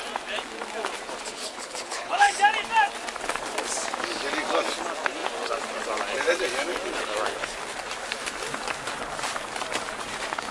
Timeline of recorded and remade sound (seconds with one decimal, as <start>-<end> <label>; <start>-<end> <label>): 0.0-1.3 recorded; 1.3-2.3 remade; 2.3-10.5 recorded